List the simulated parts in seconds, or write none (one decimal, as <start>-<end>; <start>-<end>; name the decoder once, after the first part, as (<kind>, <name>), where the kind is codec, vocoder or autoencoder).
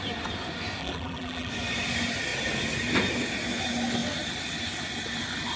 0.8-1.5 (vocoder, BigVGAN v2)